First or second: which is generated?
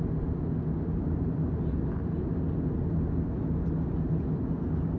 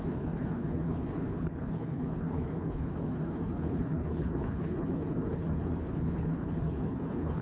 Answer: second